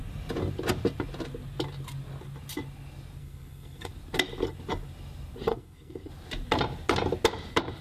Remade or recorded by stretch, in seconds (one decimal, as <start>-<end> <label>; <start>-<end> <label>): 0.0-3.2 recorded; 3.2-3.9 remade; 3.9-5.5 recorded; 5.5-6.1 remade; 6.1-7.8 recorded

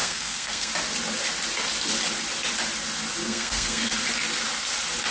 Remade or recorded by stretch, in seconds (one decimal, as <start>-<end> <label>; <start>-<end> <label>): 0.0-0.7 remade; 0.7-3.2 recorded; 3.2-3.9 remade; 3.9-5.1 recorded

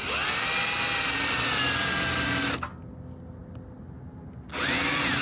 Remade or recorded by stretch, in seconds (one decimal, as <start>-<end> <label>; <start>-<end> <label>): 0.0-5.2 recorded

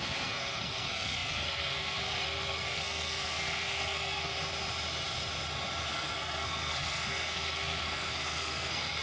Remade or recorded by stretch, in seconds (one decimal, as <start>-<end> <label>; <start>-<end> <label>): 0.0-4.3 remade; 4.3-5.9 recorded; 5.9-9.0 remade

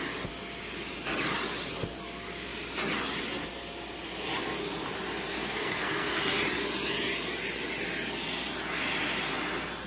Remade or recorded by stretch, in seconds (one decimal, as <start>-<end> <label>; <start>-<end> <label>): 0.0-5.3 recorded; 5.3-6.2 remade; 6.2-9.9 recorded

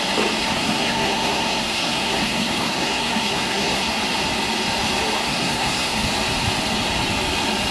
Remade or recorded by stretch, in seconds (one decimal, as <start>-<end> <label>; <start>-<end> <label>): 0.0-0.4 recorded; 0.4-4.0 remade; 4.0-5.2 recorded; 5.2-6.1 remade; 6.1-7.7 recorded